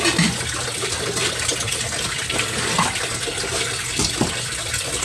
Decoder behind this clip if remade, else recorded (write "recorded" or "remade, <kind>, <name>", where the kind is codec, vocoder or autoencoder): recorded